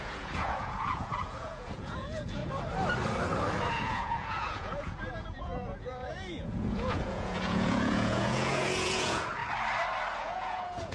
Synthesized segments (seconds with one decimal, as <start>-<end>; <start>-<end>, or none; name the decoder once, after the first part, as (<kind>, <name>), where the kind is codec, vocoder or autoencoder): 0.0-2.4 (vocoder, Vocos); 3.7-9.4; 10.2-10.9